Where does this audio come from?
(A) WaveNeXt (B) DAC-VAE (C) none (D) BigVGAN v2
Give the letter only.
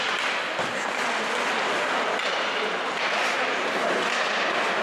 C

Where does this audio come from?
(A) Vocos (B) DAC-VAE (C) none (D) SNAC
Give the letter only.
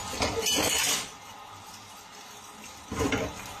C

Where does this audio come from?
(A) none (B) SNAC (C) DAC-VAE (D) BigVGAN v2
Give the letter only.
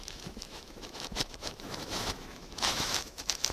C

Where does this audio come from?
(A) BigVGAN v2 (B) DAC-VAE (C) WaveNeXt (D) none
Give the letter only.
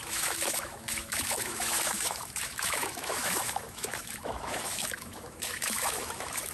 B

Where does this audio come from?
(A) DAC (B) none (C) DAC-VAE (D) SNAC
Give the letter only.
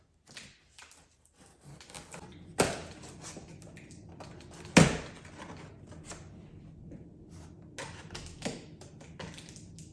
B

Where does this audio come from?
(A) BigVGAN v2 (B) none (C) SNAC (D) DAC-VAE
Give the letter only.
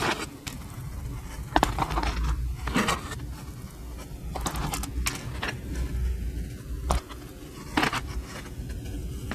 B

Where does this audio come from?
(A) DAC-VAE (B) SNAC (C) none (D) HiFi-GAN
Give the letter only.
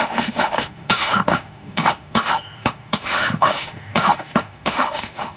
A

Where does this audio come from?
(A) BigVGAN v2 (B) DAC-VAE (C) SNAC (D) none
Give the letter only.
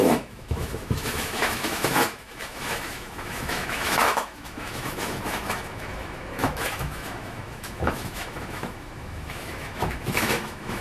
B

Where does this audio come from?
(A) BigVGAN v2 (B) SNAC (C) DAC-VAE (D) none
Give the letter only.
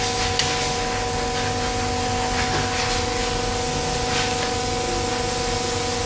D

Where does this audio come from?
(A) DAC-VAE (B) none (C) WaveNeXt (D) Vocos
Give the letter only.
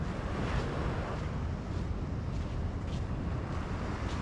B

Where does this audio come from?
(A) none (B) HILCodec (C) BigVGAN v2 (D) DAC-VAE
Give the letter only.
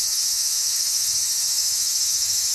D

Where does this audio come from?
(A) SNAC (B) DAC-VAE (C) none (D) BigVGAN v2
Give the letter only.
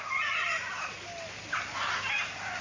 C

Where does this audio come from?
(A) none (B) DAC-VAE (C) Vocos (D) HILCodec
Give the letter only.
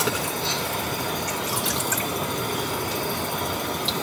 A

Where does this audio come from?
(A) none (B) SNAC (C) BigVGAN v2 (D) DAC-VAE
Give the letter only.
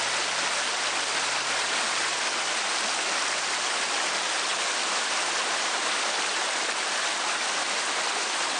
A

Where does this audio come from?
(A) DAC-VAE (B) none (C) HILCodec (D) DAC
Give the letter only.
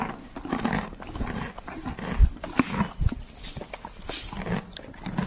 B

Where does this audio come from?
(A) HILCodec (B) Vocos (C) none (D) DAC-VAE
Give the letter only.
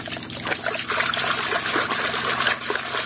C